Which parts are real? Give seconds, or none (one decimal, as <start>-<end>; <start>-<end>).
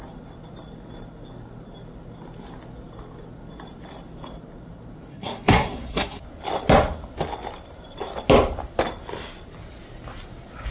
0.0-5.1; 6.2-10.7